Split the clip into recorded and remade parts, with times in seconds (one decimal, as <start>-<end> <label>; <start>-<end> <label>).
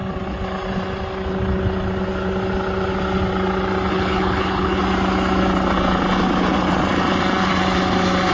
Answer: 0.0-3.9 recorded; 3.9-4.8 remade; 4.8-8.3 recorded